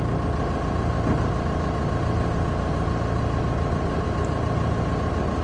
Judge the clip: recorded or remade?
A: recorded